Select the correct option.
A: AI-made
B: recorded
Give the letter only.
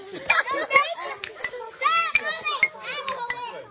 B